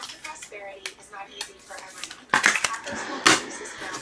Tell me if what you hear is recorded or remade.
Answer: recorded